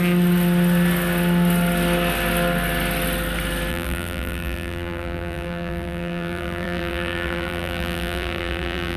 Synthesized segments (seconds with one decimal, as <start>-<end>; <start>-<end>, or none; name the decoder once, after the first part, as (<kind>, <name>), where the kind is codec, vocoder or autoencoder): 3.7-9.0 (vocoder, BigVGAN v2)